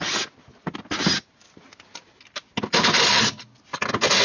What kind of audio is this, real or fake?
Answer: real